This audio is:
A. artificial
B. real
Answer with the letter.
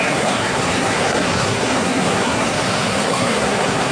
A